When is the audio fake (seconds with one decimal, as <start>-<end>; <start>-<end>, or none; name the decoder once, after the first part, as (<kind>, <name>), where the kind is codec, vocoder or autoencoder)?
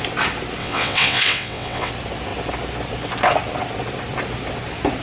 0.6-1.9 (vocoder, WaveNeXt)